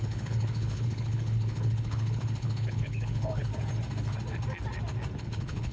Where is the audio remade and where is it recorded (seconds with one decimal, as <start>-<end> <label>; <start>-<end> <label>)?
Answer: 0.0-3.5 remade; 3.5-5.2 recorded; 5.2-5.7 remade